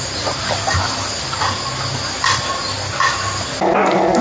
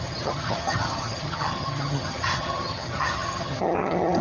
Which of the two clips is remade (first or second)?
second